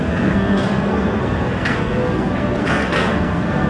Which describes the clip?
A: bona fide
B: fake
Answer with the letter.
B